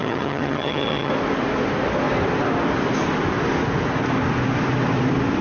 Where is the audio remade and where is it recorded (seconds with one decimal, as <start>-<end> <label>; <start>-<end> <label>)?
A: 0.0-1.1 remade; 1.1-5.4 recorded